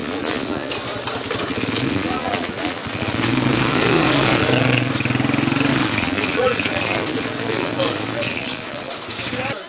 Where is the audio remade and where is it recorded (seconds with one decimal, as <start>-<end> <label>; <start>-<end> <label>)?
0.0-0.7 remade; 0.7-1.5 recorded; 1.5-4.9 remade; 4.9-5.7 recorded; 5.7-8.9 remade; 8.9-9.7 recorded